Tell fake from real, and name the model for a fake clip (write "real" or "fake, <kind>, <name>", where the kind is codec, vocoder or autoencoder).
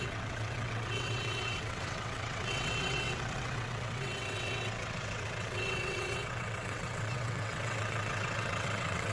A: fake, vocoder, WaveNeXt